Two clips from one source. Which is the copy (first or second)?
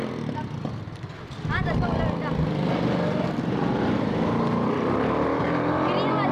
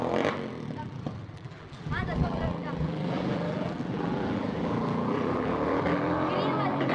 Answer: second